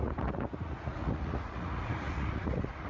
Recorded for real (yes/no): no